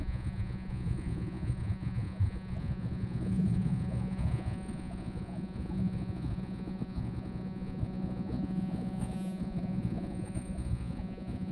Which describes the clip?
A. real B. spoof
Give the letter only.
B